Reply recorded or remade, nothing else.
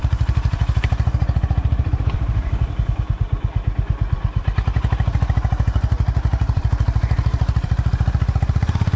remade